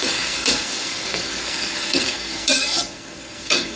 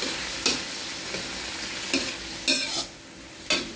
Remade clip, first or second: first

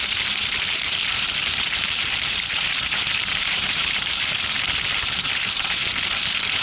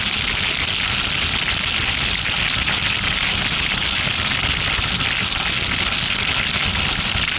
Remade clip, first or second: first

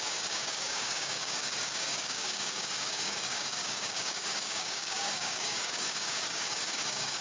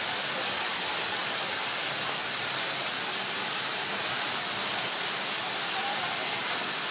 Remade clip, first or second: first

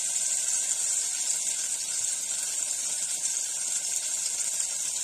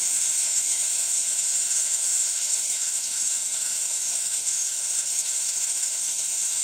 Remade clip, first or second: second